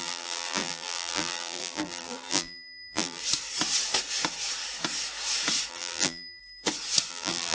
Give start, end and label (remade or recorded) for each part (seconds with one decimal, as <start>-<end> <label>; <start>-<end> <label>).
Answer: 0.0-3.2 remade; 3.2-5.7 recorded; 5.7-6.4 remade; 6.4-7.1 recorded; 7.1-7.5 remade